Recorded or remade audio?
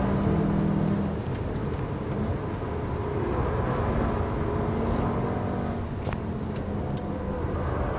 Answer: recorded